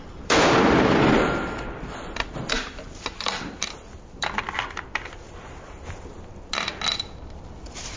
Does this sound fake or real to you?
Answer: fake